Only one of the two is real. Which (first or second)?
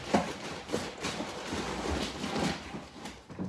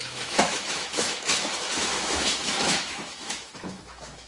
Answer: first